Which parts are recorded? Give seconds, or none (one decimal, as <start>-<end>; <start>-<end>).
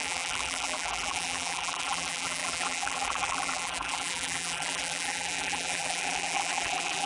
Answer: none